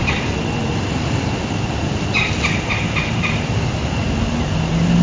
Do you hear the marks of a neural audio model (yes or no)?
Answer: no